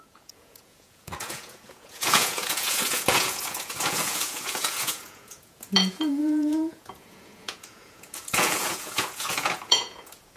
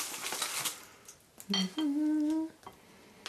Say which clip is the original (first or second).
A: second